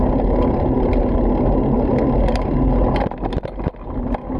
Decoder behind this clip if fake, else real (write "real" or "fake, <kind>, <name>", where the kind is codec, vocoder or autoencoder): real